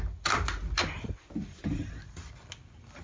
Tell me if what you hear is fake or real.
real